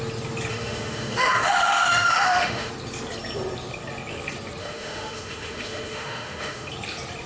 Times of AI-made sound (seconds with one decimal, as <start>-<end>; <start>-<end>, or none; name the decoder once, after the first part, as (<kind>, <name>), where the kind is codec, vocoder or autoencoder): 0.5-2.7 (autoencoder, DAC-VAE); 4.6-6.7

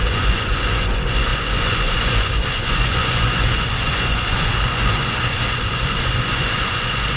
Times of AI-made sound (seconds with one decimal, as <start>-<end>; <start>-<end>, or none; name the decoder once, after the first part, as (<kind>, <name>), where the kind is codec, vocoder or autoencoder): 0.0-7.2 (vocoder, Vocos)

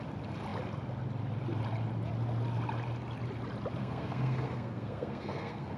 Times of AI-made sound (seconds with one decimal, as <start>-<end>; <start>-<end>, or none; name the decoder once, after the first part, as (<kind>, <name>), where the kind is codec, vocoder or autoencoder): 3.8-5.8 (codec, SNAC)

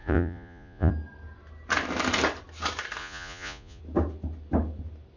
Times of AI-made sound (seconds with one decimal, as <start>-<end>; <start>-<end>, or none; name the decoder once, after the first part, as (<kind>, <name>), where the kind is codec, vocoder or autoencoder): 0.0-0.9 (vocoder, Vocos); 3.0-3.8

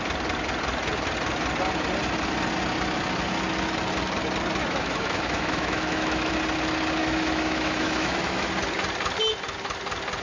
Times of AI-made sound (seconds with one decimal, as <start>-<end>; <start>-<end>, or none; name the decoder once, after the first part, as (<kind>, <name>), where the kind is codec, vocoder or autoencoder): 4.6-6.3 (autoencoder, DAC-VAE); 7.0-8.5

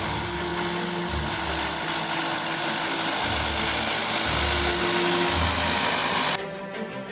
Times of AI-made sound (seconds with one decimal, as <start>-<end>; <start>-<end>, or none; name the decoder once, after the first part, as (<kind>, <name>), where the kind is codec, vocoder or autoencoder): 6.0-7.1 (vocoder, BigVGAN v2)

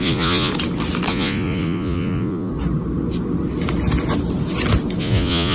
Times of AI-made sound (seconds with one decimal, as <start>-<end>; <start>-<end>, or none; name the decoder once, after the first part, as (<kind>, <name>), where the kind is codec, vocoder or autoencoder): 0.0-0.5 (vocoder, Vocos); 1.1-2.5; 5.0-5.5